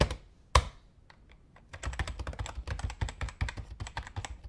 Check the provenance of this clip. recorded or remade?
recorded